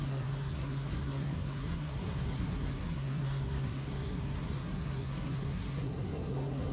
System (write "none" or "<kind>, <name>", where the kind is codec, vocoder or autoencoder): codec, SNAC